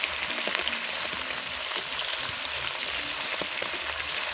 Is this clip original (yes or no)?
yes